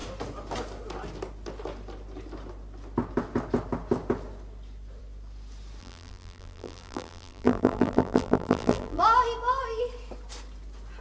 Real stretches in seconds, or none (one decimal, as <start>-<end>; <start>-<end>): 0.0-5.8; 9.0-11.0